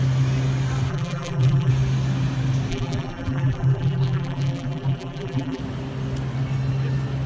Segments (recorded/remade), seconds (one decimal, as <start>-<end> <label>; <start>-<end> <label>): 0.0-0.9 recorded; 0.9-1.7 remade; 1.7-2.7 recorded; 2.7-5.6 remade; 5.6-7.3 recorded